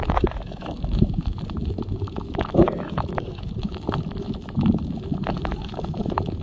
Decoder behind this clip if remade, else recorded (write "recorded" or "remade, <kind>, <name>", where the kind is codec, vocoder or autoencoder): remade, autoencoder, DAC-VAE